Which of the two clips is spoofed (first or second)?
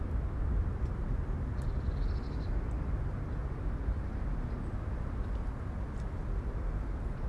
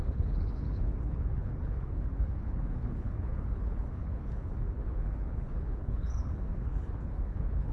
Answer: second